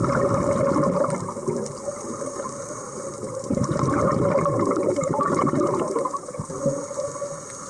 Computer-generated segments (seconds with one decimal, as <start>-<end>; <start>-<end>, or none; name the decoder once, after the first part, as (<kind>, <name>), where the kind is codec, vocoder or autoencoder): 1.9-6.5 (vocoder, BigVGAN v2)